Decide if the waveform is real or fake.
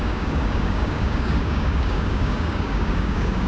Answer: fake